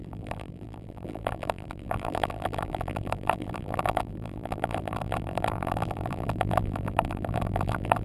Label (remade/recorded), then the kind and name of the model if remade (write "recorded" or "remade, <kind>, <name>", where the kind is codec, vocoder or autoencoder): remade, vocoder, BigVGAN v2